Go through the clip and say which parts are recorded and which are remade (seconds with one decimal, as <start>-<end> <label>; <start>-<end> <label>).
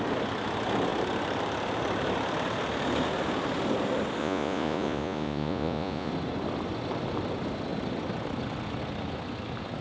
0.0-4.2 recorded; 4.2-6.1 remade; 6.1-9.8 recorded